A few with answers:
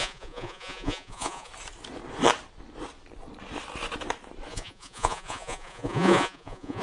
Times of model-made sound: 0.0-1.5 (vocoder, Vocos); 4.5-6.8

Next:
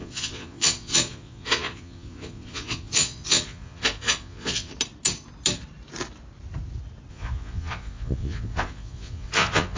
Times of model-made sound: 0.0-4.7 (vocoder, Vocos); 7.1-9.8

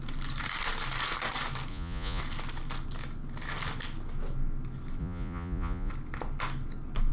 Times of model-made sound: 1.7-2.2 (vocoder, Vocos); 5.0-5.9

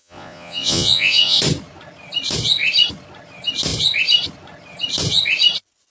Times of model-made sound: 0.0-1.4 (vocoder, Vocos)

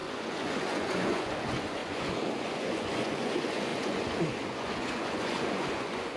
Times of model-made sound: 0.0-6.2 (vocoder, Vocos)

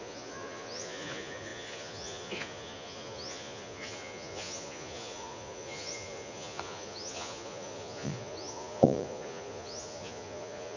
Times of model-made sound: 0.0-10.8 (vocoder, Vocos)